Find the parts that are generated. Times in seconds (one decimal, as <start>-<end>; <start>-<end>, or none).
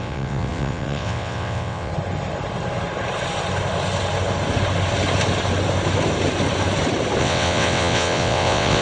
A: 0.0-1.9; 7.2-8.8